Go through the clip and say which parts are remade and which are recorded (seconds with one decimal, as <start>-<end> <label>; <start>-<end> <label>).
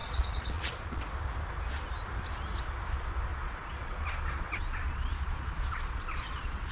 0.0-1.0 remade; 1.0-3.3 recorded; 3.3-6.7 remade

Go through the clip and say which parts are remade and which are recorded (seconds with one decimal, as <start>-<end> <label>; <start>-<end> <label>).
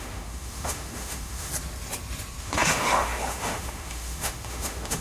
0.0-1.5 remade; 1.5-2.4 recorded; 2.4-5.0 remade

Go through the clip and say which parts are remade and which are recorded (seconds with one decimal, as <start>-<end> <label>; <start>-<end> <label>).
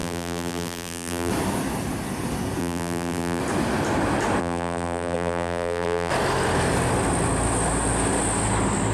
0.0-1.3 remade; 1.3-2.6 recorded; 2.6-3.4 remade; 3.4-4.4 recorded; 4.4-6.1 remade; 6.1-8.9 recorded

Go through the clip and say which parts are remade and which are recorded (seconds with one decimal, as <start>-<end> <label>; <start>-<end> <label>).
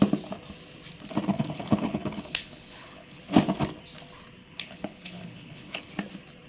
0.0-1.3 recorded; 1.3-3.2 remade; 3.2-4.4 recorded; 4.4-5.9 remade; 5.9-6.5 recorded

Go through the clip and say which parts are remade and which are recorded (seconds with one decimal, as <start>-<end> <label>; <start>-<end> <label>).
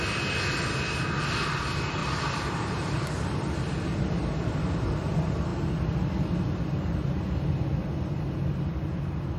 0.0-2.0 recorded; 2.0-3.1 remade; 3.1-9.4 recorded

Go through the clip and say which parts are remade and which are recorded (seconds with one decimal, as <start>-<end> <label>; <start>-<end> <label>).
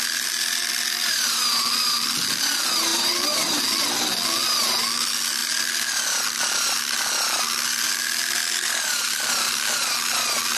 0.0-2.9 recorded; 2.9-3.6 remade; 3.6-10.6 recorded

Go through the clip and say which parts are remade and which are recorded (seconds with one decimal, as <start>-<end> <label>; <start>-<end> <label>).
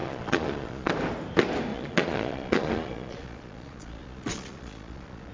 0.0-0.9 remade; 0.9-1.7 recorded; 1.7-5.3 remade